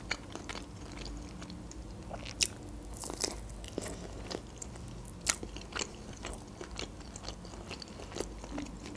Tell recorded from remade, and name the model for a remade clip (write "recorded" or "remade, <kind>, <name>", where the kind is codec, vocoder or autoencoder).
recorded